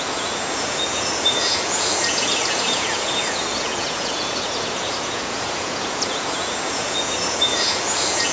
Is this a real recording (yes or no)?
no